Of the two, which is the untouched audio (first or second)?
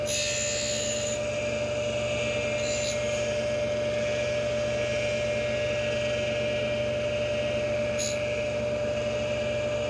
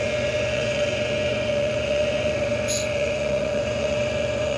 first